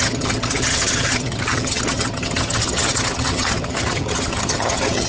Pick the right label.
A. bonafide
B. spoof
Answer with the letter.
B